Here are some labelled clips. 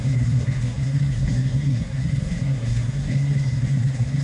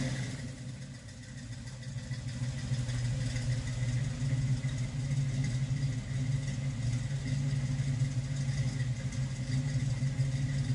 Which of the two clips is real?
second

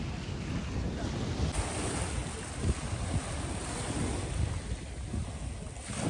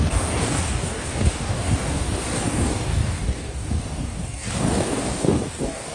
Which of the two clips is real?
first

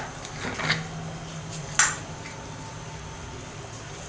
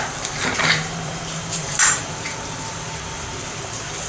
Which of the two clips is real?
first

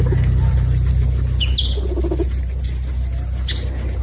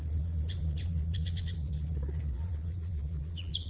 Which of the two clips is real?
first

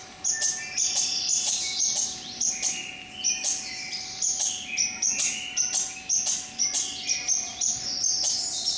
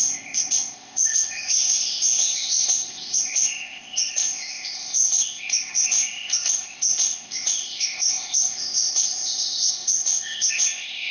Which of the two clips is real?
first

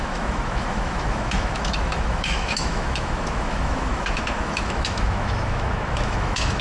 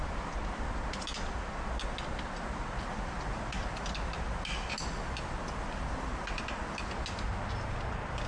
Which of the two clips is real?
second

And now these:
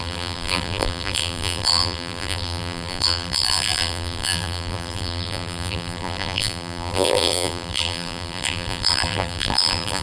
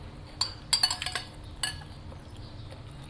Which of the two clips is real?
second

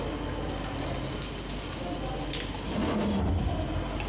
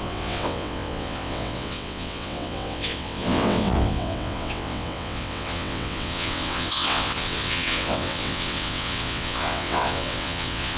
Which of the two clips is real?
first